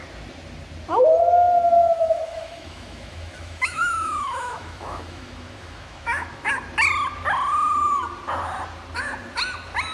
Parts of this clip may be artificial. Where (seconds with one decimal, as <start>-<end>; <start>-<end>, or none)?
1.8-6.5